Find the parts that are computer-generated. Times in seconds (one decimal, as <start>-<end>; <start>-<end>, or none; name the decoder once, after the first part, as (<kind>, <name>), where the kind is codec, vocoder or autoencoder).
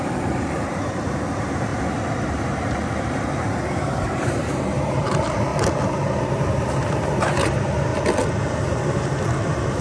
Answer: 0.0-5.5 (vocoder, BigVGAN v2); 6.2-7.9; 9.4-9.8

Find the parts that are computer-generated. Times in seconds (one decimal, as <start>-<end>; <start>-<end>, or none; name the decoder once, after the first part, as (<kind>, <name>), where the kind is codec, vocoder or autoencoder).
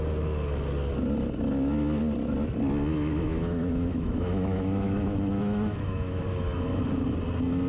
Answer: 2.9-6.8 (autoencoder, DAC-VAE)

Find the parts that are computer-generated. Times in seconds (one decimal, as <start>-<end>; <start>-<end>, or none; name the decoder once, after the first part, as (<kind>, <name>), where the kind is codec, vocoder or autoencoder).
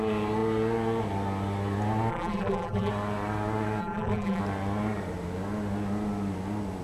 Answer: 2.1-2.9 (vocoder, BigVGAN v2); 3.8-4.4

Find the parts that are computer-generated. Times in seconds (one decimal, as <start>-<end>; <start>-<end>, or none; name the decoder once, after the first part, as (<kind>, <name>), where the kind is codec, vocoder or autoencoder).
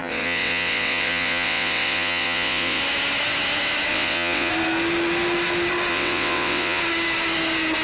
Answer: 0.0-2.8 (vocoder, WaveNeXt); 3.9-4.5; 5.9-6.8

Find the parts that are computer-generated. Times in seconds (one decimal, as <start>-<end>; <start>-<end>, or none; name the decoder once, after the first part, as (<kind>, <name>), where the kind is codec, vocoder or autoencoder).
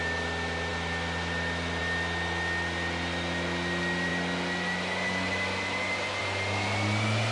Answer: none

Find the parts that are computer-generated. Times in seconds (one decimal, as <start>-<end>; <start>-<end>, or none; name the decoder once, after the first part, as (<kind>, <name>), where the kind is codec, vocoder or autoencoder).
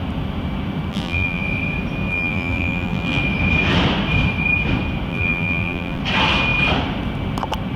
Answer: 0.9-1.4 (vocoder, BigVGAN v2); 2.1-3.2; 5.1-6.0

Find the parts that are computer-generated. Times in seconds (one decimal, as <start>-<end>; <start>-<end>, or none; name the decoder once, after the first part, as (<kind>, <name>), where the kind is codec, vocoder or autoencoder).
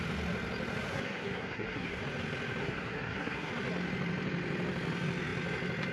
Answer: 0.9-2.0 (codec, SNAC); 2.6-3.5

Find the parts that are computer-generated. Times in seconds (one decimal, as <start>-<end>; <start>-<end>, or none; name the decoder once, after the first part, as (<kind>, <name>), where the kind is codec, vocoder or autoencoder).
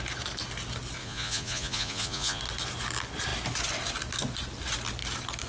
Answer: 1.0-2.4 (vocoder, Vocos)